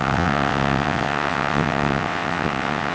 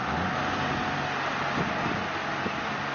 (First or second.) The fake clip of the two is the first